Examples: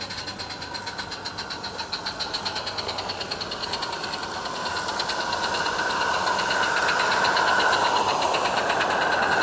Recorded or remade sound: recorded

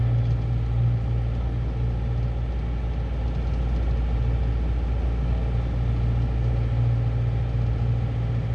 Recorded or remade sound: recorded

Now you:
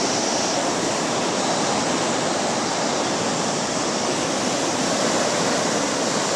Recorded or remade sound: remade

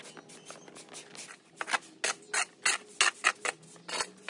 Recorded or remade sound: recorded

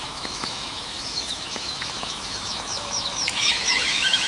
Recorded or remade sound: remade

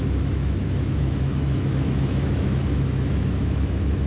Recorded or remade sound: remade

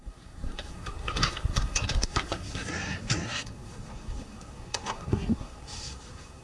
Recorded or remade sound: remade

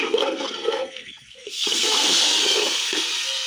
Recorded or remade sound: remade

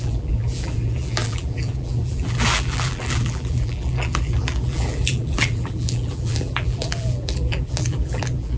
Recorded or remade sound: remade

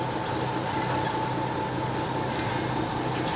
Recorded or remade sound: recorded